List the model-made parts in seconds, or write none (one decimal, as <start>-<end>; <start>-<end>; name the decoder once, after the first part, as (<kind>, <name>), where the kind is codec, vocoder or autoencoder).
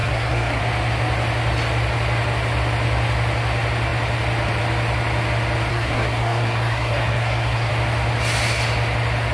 0.0-0.6 (codec, SNAC); 5.7-7.7